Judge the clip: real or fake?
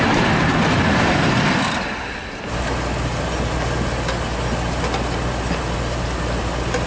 real